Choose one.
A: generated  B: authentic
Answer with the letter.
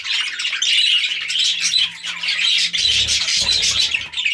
B